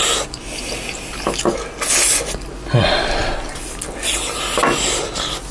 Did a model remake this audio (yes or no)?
no